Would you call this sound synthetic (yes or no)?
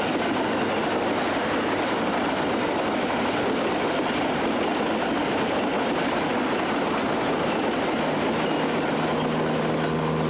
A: no